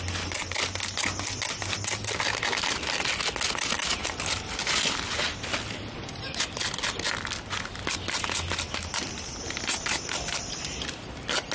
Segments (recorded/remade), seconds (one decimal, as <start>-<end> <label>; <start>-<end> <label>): 0.0-11.5 recorded